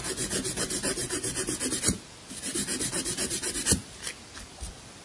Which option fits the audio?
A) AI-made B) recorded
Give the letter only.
B